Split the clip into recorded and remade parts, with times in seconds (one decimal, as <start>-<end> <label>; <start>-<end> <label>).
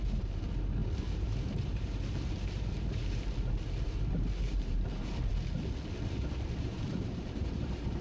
0.0-5.3 remade; 5.3-6.6 recorded; 6.6-8.0 remade